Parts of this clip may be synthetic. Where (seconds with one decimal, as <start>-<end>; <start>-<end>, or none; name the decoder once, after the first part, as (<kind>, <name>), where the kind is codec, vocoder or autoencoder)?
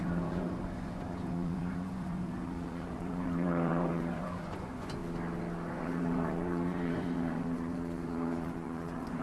0.0-5.0 (vocoder, Vocos); 5.7-9.2